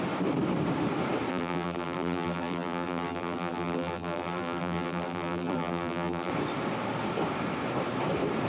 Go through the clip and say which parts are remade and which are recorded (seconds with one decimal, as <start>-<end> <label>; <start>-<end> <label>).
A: 0.0-1.3 recorded; 1.3-6.3 remade; 6.3-8.5 recorded